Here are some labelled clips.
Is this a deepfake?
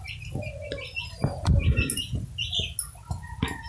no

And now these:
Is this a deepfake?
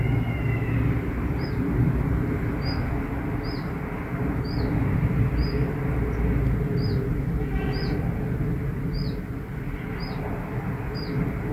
no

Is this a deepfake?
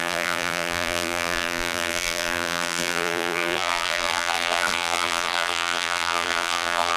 yes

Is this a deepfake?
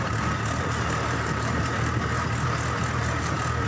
no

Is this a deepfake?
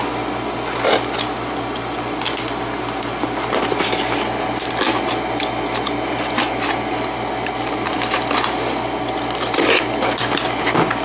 no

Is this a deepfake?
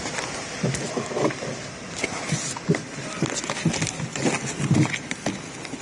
no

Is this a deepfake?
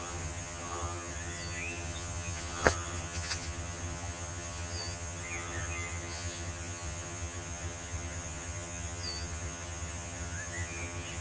yes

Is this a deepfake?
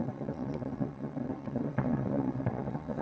yes